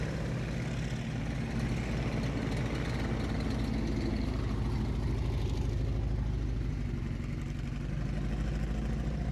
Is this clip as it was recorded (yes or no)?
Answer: yes